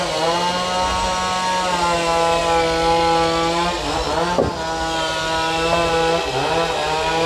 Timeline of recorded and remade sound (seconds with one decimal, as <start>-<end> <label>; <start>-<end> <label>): 0.0-7.3 recorded